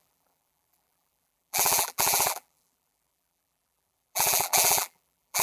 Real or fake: fake